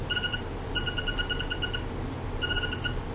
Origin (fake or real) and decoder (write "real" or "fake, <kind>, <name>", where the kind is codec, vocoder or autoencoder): real